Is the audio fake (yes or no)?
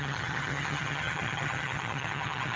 yes